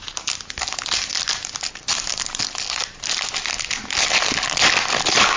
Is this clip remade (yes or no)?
no